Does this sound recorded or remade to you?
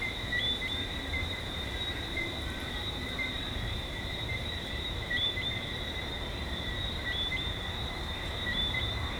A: remade